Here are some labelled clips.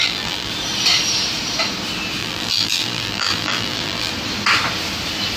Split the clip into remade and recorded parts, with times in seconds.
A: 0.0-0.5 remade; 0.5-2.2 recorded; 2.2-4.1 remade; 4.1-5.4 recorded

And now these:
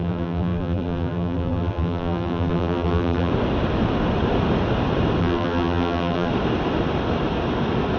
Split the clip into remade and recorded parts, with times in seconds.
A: 0.0-3.3 remade; 3.3-5.2 recorded; 5.2-6.3 remade; 6.3-8.0 recorded

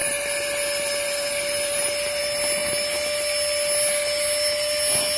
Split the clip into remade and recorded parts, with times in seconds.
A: 0.0-2.2 remade; 2.2-5.2 recorded

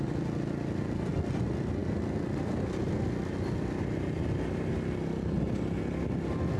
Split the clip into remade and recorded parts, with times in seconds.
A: 0.0-6.6 recorded